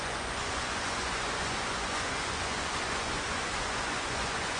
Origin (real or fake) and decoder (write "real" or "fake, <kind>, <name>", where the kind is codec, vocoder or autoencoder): fake, vocoder, Vocos